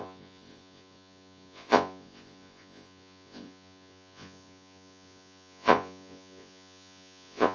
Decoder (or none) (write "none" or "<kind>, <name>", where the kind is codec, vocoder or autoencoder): vocoder, Vocos